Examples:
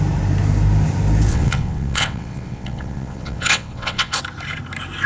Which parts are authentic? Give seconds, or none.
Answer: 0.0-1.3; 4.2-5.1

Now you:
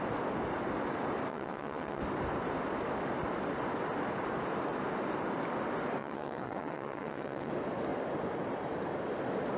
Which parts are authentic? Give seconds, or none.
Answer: 0.0-1.3; 2.0-6.0; 7.5-9.6

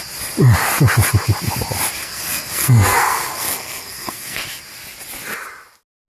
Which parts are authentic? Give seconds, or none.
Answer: 0.0-2.0; 4.6-6.1

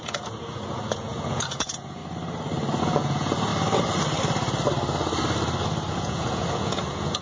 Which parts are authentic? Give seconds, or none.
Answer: 2.0-2.8; 3.5-5.9

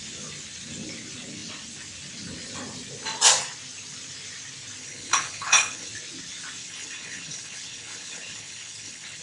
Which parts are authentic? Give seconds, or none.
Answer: 0.0-4.8; 5.9-6.6

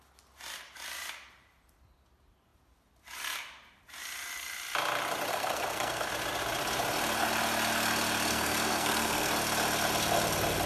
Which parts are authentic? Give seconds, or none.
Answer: 0.0-5.3; 6.1-8.3; 9.3-10.7

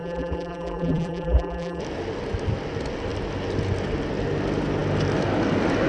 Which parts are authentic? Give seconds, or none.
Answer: 1.8-5.9